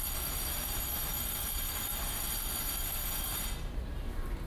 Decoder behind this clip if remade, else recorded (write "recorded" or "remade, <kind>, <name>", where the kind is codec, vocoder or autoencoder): recorded